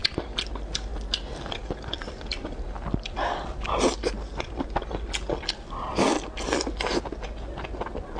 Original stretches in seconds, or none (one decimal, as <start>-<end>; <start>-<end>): 0.0-8.2